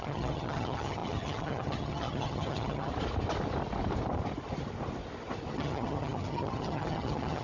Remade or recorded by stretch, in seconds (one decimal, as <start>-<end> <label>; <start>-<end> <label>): 0.0-2.9 remade; 2.9-5.5 recorded; 5.5-7.4 remade